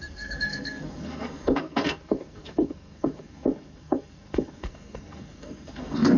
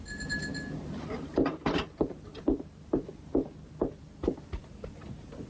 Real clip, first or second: second